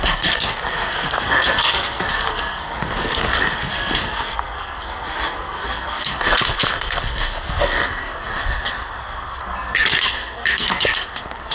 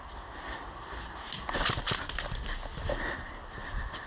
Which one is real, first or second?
second